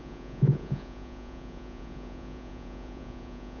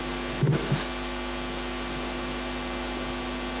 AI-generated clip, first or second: first